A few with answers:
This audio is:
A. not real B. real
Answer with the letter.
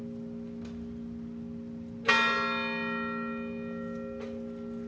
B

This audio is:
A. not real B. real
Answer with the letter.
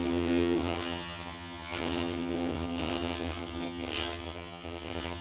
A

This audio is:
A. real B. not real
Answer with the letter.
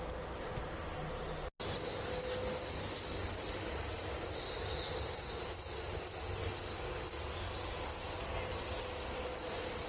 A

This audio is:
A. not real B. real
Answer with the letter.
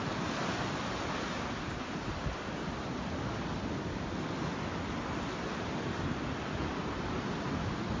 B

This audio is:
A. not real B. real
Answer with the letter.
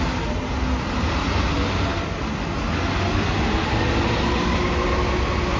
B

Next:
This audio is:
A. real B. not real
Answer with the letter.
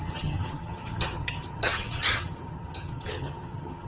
B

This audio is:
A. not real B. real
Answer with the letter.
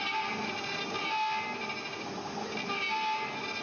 B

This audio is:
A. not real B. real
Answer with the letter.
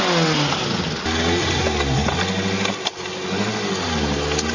B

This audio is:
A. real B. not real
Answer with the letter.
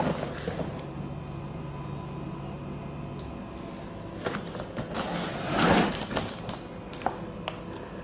A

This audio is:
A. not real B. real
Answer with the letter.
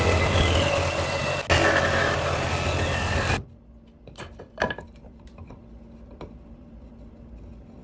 B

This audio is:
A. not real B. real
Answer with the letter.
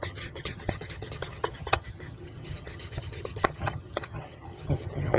A